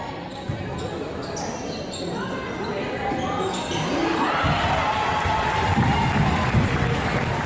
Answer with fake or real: real